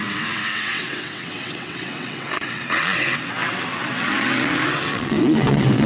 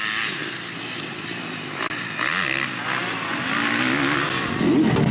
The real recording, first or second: second